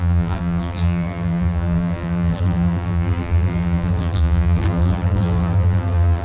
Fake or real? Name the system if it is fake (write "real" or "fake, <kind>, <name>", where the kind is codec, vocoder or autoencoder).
fake, vocoder, BigVGAN v2